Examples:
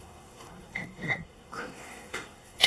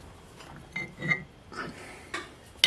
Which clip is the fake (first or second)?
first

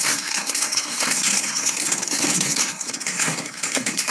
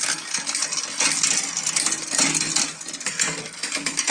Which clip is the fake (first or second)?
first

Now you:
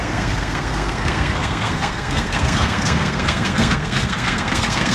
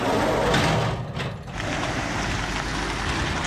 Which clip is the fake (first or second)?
first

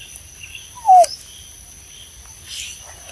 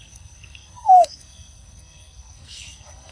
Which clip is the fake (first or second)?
second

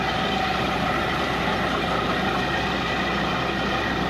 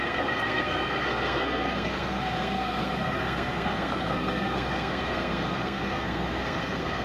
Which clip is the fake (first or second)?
second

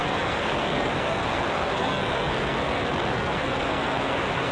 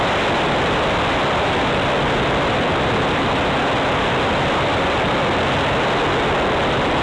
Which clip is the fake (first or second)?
first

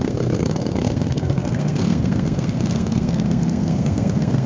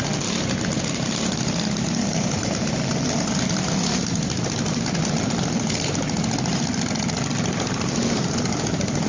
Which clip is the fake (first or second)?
first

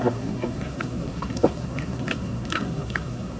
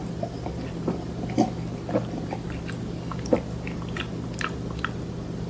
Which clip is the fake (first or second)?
first